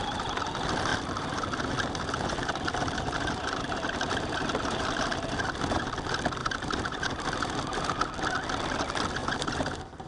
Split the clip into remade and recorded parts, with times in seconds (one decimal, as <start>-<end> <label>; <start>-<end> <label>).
0.0-0.9 recorded; 0.9-5.9 remade; 5.9-6.4 recorded; 6.4-8.0 remade; 8.0-9.2 recorded; 9.2-10.1 remade